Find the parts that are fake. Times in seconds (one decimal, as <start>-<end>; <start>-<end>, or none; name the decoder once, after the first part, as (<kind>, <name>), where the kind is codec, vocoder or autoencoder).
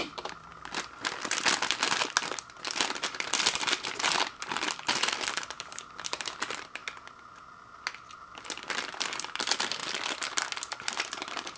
0.0-0.5 (vocoder, BigVGAN v2); 2.2-6.8; 8.9-9.8; 10.7-11.6